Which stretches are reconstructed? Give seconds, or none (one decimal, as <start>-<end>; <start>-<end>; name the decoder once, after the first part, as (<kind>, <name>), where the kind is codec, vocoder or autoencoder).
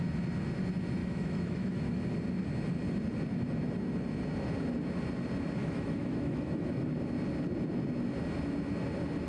1.0-2.0 (autoencoder, DAC-VAE); 5.6-6.9